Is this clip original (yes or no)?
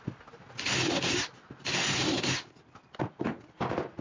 yes